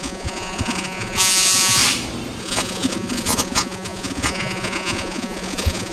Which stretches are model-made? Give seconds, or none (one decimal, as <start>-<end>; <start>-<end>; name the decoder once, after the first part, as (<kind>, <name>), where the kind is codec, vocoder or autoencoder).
0.0-1.8 (vocoder, Vocos); 2.4-5.9